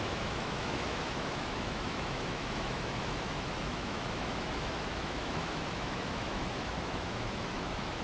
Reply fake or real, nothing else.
fake